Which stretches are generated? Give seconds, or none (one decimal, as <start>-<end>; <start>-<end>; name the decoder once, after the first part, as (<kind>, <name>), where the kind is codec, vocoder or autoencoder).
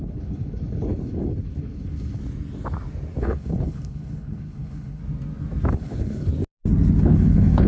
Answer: 0.0-2.2 (codec, HILCodec); 3.2-5.0; 5.7-6.3; 7.0-7.7